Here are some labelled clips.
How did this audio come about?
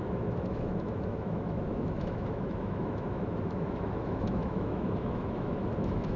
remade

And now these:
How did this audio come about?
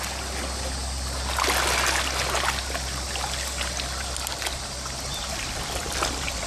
recorded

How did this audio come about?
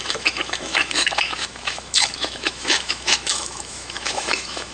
remade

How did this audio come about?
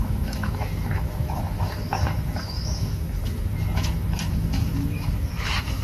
remade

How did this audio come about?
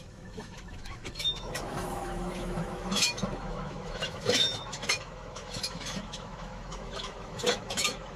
remade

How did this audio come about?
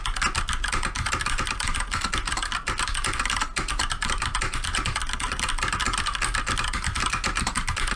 recorded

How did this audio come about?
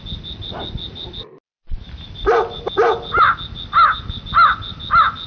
recorded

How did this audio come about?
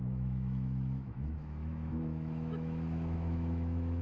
remade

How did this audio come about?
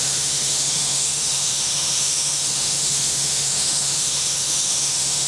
remade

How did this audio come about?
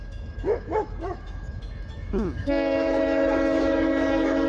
remade